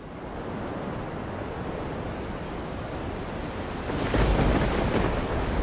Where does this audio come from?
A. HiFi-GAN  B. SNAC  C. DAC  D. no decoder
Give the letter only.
D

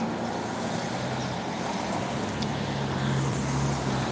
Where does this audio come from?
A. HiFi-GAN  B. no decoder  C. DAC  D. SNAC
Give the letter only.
B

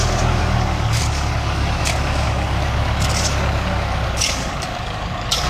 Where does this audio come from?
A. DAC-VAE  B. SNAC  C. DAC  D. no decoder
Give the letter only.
C